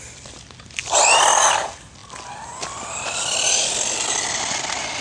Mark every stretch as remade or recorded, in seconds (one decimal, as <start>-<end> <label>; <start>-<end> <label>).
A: 0.0-5.0 recorded